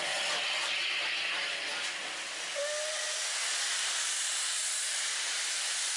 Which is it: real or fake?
real